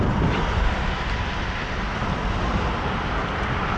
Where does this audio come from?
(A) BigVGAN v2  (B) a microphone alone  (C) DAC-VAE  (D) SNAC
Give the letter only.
B